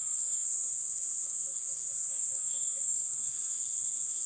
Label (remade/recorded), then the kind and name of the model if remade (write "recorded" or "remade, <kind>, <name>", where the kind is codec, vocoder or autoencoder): remade, codec, SNAC